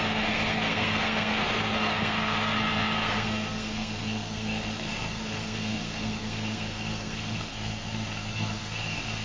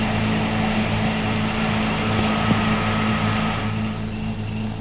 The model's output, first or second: first